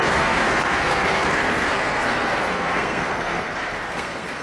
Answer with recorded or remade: remade